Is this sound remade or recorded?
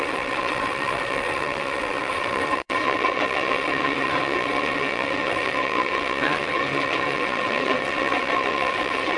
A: remade